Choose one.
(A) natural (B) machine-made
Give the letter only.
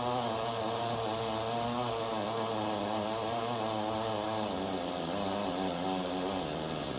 A